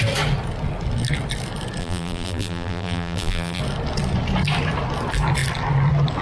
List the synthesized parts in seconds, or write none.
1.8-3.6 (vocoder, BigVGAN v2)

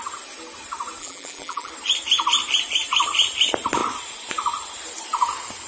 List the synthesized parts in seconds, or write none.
1.0-1.7 (vocoder, BigVGAN v2)

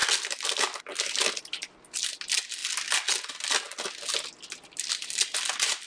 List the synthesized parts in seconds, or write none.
0.0-0.8 (vocoder, BigVGAN v2)

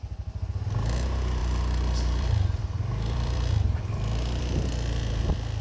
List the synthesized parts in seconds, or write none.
1.4-4.4 (vocoder, BigVGAN v2)

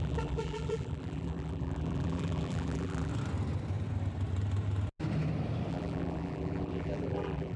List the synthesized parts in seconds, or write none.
0.0-3.1 (vocoder, BigVGAN v2); 5.7-7.6